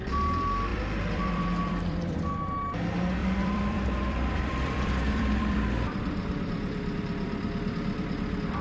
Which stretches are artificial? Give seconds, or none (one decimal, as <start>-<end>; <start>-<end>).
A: 0.7-2.4; 3.2-8.6